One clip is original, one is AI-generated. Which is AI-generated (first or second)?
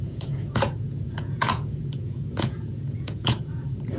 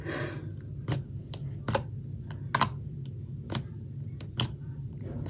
first